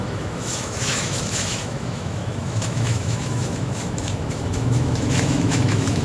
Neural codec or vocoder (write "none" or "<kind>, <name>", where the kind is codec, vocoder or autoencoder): autoencoder, DAC-VAE